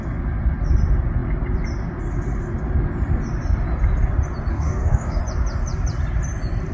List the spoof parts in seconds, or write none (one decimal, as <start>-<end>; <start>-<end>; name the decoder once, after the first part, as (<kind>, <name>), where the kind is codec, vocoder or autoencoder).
4.5-5.2 (codec, DAC)